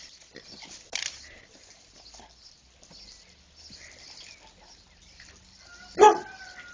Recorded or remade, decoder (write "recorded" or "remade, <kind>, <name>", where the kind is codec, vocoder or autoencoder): recorded